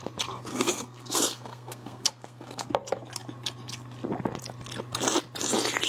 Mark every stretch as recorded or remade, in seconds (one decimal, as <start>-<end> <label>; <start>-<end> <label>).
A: 0.0-0.5 recorded; 0.5-2.7 remade; 2.7-5.9 recorded